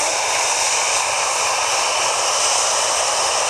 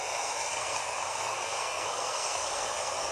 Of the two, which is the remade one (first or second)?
second